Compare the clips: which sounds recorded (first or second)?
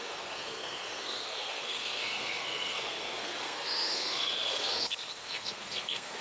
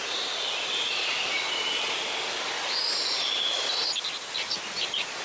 second